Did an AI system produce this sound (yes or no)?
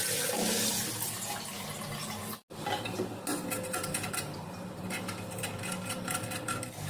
no